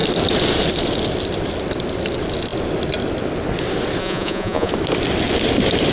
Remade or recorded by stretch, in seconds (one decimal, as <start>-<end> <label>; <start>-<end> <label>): 0.0-4.0 recorded; 4.0-4.7 remade; 4.7-5.9 recorded